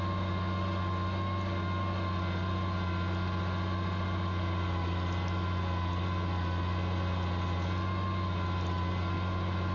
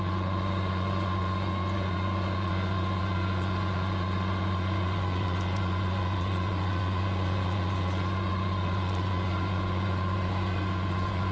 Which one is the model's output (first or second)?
second